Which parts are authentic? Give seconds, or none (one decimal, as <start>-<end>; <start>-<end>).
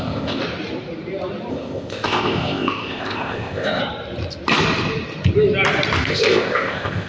0.4-1.5; 3.8-6.1